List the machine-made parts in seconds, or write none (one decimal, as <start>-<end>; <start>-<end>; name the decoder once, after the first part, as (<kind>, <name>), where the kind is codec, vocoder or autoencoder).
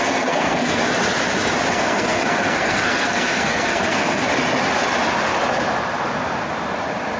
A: 0.0-0.8 (codec, SNAC); 1.7-4.3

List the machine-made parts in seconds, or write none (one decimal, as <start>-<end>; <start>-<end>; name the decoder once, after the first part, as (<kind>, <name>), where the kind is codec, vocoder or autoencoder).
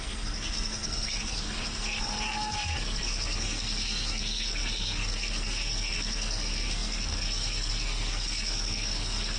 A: 0.0-9.4 (codec, SNAC)